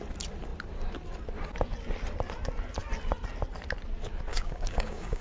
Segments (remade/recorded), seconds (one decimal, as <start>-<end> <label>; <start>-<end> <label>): 0.0-4.3 recorded; 4.3-5.2 remade